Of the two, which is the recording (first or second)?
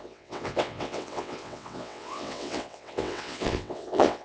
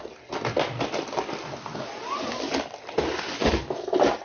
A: second